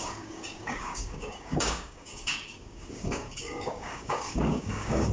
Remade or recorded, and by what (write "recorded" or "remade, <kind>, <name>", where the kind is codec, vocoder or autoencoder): remade, codec, DAC